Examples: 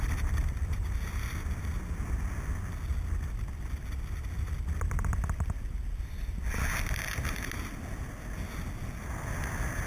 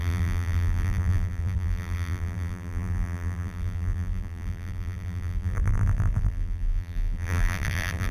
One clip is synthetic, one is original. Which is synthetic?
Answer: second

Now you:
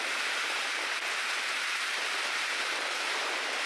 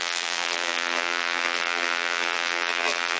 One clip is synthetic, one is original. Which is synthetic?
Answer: second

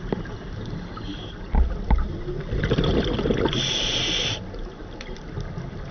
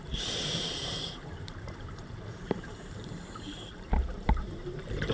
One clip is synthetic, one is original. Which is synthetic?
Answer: second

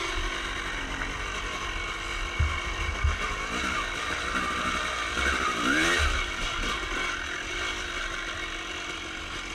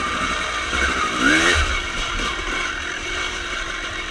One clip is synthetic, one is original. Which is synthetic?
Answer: second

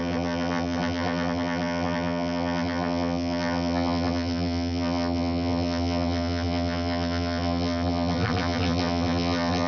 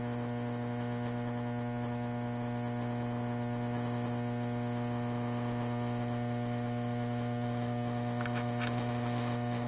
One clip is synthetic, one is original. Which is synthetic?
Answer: first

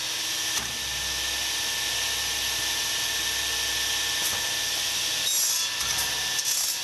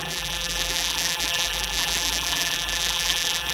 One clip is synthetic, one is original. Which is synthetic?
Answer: second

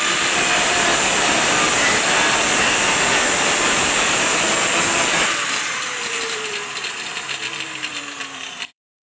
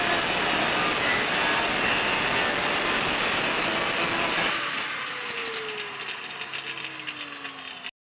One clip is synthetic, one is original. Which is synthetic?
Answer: first